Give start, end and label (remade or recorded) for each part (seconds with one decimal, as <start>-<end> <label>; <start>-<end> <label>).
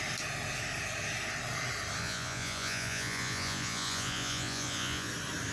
0.0-2.0 recorded; 2.0-5.1 remade; 5.1-5.5 recorded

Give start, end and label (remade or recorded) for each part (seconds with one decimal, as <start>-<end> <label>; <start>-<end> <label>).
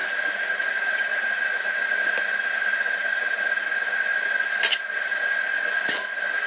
0.0-1.7 remade; 1.7-6.5 recorded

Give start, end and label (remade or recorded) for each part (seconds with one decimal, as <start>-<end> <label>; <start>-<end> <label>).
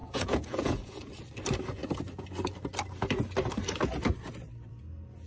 0.0-1.1 remade; 1.1-5.3 recorded